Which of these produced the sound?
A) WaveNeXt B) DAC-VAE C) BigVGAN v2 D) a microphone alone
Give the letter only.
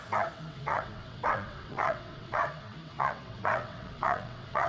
A